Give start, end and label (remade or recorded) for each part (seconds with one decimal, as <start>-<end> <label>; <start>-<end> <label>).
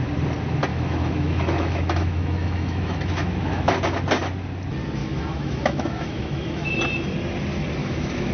0.0-0.7 recorded; 0.7-3.7 remade; 3.7-5.0 recorded; 5.0-6.7 remade; 6.7-7.8 recorded; 7.8-8.3 remade